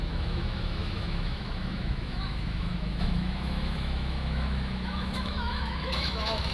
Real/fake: fake